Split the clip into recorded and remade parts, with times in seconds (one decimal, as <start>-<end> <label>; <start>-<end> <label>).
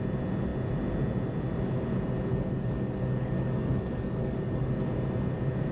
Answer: 0.0-2.3 recorded; 2.3-4.8 remade; 4.8-5.7 recorded